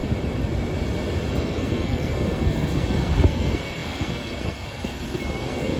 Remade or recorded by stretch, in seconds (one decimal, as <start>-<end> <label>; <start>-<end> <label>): 0.0-1.3 recorded; 1.3-5.8 remade